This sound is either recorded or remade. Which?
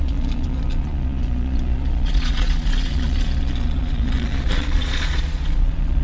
remade